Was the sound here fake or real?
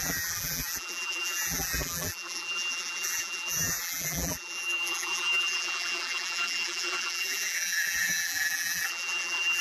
fake